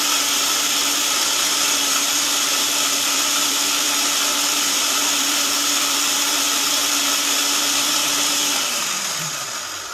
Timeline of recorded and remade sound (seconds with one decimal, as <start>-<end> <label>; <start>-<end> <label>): 0.0-9.9 remade